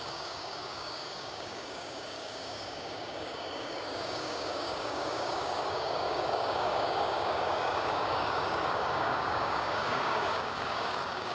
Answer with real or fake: fake